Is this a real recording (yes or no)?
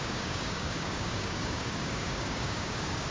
no